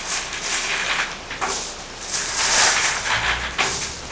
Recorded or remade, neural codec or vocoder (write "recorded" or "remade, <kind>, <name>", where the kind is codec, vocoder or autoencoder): recorded